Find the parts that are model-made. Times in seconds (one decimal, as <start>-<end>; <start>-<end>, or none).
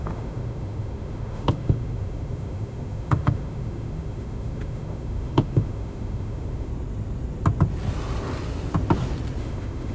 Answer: 0.0-6.7; 9.4-9.9